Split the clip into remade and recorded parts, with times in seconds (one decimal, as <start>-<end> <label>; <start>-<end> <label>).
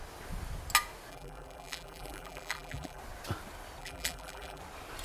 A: 0.0-1.1 recorded; 1.1-3.0 remade; 3.0-3.8 recorded; 3.8-4.6 remade; 4.6-5.0 recorded